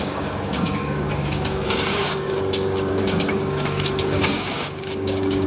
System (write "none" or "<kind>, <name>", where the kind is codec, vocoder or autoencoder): codec, DAC